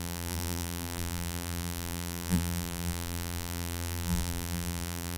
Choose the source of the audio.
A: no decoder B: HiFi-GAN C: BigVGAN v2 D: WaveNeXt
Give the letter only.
C